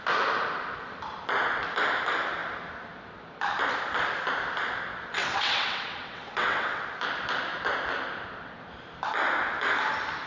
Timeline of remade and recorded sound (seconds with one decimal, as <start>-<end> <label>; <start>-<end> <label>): 0.0-5.2 recorded; 5.2-6.8 remade; 6.8-10.3 recorded